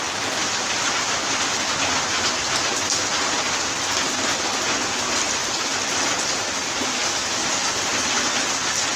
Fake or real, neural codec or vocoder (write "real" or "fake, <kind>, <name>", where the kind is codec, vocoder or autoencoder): fake, vocoder, BigVGAN v2